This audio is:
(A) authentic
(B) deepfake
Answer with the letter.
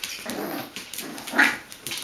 A